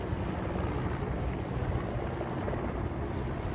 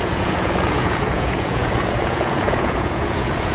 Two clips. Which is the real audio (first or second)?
first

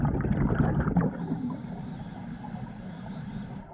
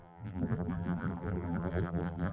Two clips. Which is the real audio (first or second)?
first